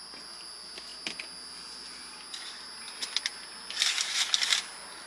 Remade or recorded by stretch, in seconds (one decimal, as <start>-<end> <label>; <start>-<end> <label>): 0.0-5.1 recorded